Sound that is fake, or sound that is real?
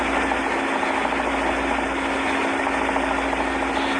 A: real